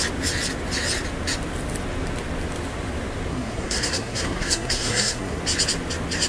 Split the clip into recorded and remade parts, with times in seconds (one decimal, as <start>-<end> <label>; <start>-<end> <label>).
0.0-3.3 recorded; 3.3-5.4 remade; 5.4-6.3 recorded